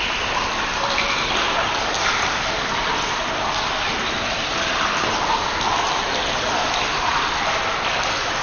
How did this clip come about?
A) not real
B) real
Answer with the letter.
B